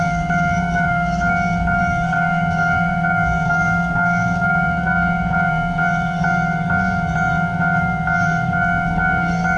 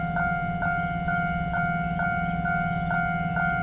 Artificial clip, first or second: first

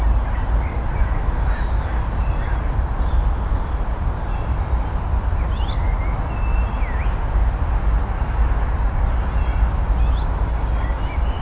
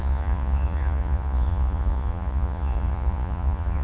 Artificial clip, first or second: second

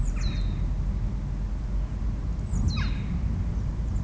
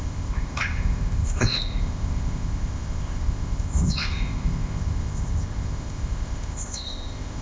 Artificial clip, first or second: second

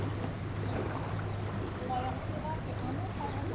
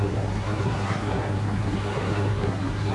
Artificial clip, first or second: second